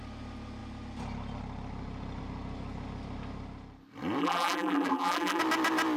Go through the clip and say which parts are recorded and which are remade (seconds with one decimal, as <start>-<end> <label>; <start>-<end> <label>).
0.0-4.2 recorded; 4.2-5.4 remade; 5.4-6.0 recorded